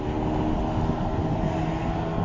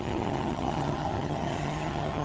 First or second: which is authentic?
first